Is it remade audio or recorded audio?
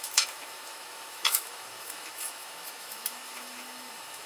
remade